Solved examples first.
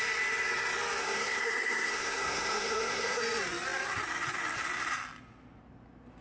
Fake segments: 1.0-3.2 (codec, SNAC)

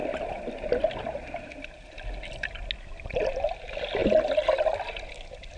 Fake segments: none

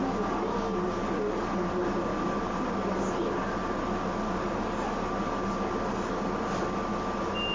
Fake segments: 2.1-2.7 (vocoder, BigVGAN v2)

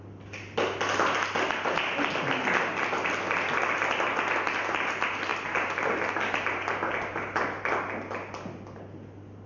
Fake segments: none

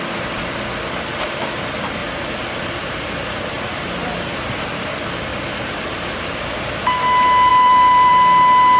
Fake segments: 2.0-4.1 (vocoder, BigVGAN v2); 5.3-6.3; 7.5-8.1

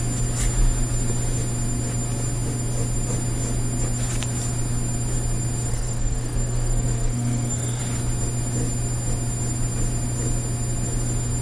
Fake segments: 5.7-7.8 (codec, SNAC)